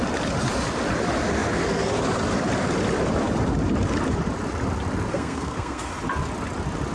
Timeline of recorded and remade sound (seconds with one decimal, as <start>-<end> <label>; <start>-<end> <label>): 0.0-5.1 recorded; 5.1-5.9 remade; 5.9-6.9 recorded